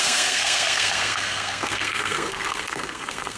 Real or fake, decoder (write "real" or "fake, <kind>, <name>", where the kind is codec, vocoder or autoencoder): fake, codec, SNAC